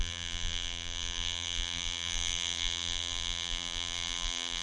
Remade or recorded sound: remade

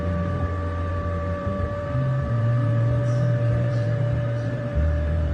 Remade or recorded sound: remade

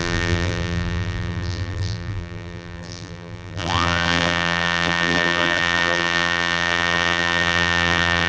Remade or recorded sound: remade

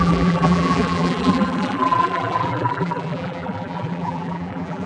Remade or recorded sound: remade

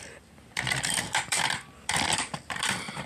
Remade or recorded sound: remade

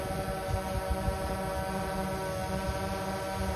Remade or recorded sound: recorded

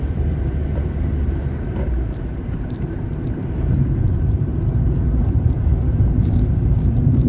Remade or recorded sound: remade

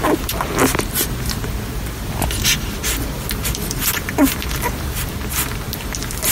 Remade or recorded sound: recorded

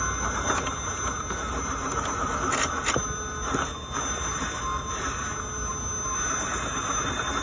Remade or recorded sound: recorded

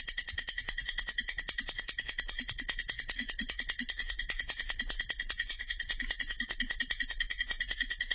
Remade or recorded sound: remade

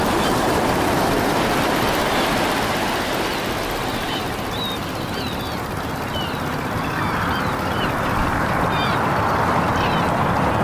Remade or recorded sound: remade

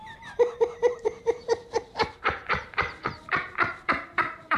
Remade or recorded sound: remade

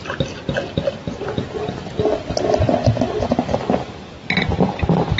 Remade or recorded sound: recorded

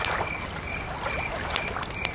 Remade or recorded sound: recorded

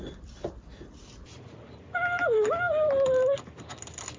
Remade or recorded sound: remade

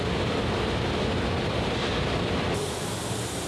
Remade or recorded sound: remade